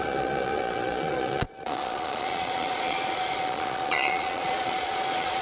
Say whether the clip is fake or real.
fake